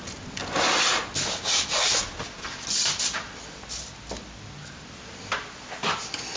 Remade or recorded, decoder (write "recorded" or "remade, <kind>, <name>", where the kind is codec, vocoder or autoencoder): recorded